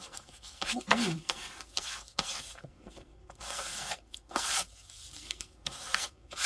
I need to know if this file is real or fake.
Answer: fake